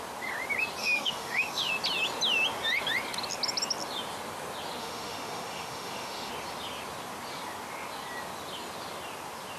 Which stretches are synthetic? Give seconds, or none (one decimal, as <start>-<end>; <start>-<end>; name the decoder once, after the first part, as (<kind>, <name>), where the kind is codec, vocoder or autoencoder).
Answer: 0.8-1.7 (autoencoder, DAC-VAE); 4.8-6.3